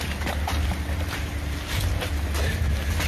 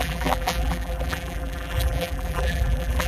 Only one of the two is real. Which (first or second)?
first